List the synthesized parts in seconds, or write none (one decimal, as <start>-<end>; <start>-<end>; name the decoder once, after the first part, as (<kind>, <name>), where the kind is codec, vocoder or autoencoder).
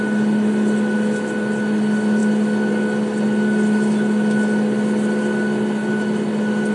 none